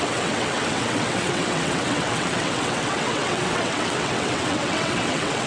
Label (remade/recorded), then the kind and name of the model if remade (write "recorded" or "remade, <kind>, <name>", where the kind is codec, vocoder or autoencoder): remade, vocoder, WaveNeXt